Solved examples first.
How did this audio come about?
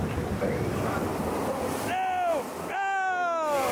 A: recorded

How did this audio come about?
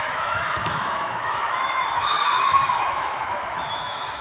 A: remade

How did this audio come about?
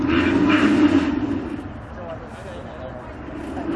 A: recorded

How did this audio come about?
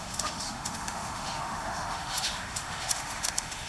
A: remade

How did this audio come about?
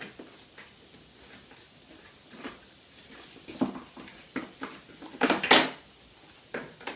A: recorded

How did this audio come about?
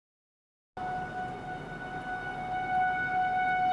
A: recorded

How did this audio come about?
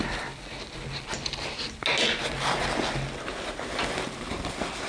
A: recorded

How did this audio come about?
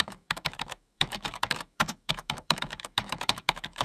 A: remade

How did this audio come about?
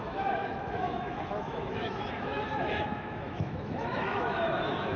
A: remade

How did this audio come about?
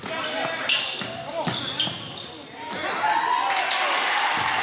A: recorded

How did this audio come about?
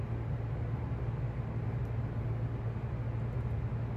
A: recorded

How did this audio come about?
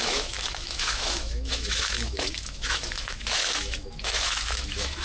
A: remade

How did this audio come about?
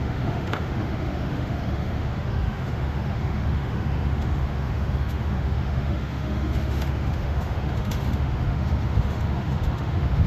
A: remade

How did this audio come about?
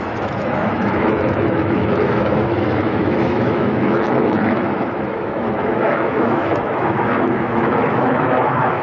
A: remade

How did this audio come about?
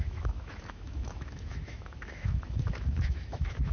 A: remade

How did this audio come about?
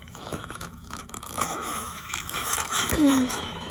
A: remade